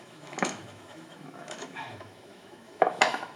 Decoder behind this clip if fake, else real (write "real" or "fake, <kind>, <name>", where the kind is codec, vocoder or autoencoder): fake, autoencoder, DAC-VAE